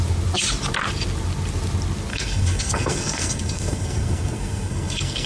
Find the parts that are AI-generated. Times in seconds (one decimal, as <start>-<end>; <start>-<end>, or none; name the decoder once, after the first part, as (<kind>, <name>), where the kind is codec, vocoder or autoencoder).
2.1-5.3 (codec, SNAC)